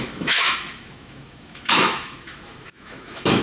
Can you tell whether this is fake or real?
fake